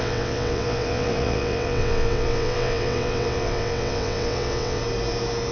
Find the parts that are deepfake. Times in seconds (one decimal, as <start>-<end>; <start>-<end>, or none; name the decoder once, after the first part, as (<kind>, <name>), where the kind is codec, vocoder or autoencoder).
0.0-4.8 (vocoder, WaveNeXt)